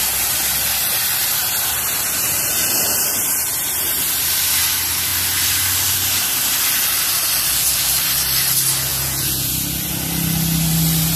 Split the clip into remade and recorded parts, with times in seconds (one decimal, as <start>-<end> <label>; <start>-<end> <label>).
0.0-8.9 recorded; 8.9-9.5 remade; 9.5-11.2 recorded